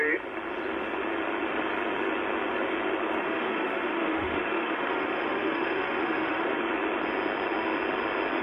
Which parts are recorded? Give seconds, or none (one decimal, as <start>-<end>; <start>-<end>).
0.0-3.2; 6.6-8.4